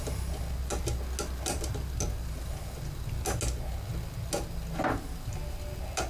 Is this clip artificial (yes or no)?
no